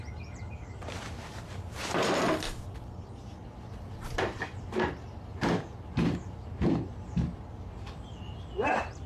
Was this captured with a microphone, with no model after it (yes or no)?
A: yes